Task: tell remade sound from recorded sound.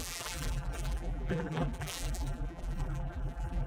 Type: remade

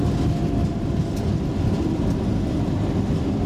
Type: remade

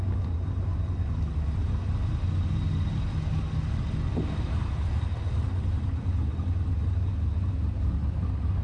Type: recorded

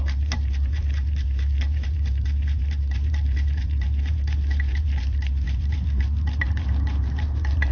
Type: remade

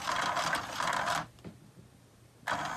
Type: remade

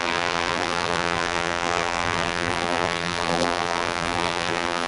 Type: remade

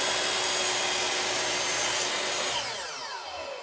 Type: recorded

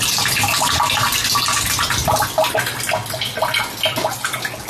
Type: recorded